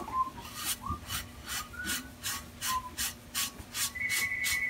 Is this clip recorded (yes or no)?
yes